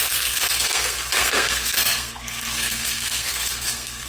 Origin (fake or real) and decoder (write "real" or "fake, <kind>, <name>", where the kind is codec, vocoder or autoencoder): fake, codec, SNAC